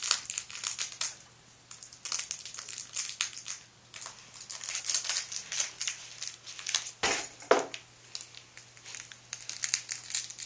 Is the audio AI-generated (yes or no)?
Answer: no